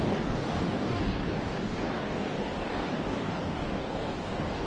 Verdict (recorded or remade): remade